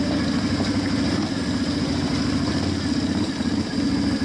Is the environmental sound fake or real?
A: real